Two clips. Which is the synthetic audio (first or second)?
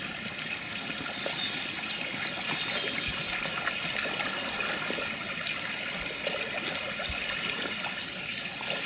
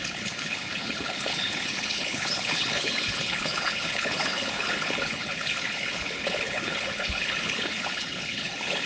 second